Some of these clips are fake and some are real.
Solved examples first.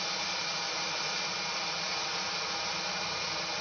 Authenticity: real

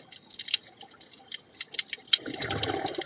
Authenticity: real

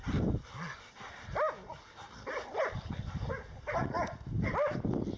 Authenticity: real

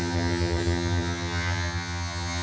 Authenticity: fake